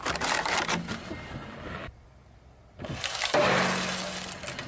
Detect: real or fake real